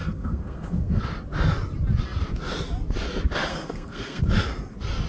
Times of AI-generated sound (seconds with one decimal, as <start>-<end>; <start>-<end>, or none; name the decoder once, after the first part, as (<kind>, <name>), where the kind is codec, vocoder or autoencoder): 0.0-1.0 (codec, SNAC); 3.5-4.2